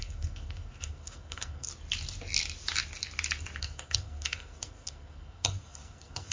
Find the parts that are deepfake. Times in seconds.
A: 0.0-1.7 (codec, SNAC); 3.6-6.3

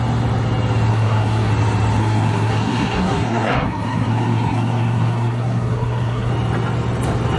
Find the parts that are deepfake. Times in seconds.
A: 0.9-1.5 (codec, SNAC); 2.0-6.3

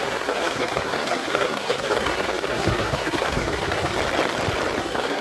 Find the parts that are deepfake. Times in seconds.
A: 0.0-4.0 (codec, SNAC); 4.8-5.2

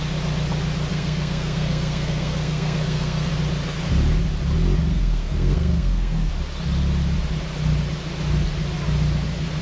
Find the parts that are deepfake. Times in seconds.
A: 0.9-3.3 (codec, SNAC); 4.9-6.3